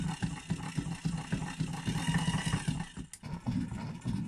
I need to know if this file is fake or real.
real